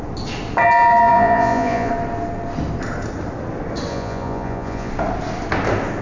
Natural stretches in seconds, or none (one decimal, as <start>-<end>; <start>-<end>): 0.0-1.1; 1.9-3.9; 4.9-6.0